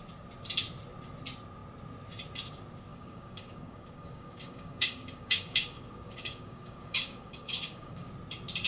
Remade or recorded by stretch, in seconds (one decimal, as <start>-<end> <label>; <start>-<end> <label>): 0.0-2.9 recorded; 2.9-8.1 remade; 8.1-8.7 recorded